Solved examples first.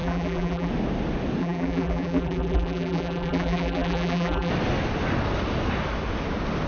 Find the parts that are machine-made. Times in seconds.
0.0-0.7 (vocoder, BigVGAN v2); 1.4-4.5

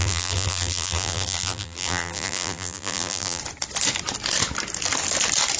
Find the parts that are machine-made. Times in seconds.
0.0-3.4 (vocoder, BigVGAN v2)

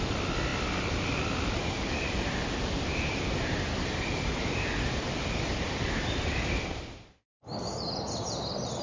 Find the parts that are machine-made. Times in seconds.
0.0-7.5 (vocoder, BigVGAN v2); 8.2-8.8

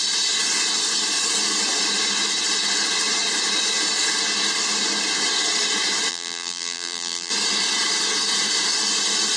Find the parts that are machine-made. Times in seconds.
6.1-7.3 (vocoder, BigVGAN v2)

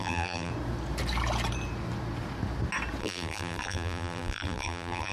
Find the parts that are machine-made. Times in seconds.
0.0-0.5 (vocoder, BigVGAN v2); 3.0-5.1

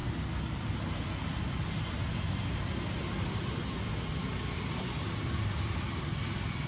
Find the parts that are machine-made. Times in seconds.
0.0-1.0 (vocoder, BigVGAN v2)